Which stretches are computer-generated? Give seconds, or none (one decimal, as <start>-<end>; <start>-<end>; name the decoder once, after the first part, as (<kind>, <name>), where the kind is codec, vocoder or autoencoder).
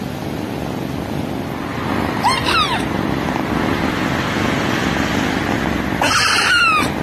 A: none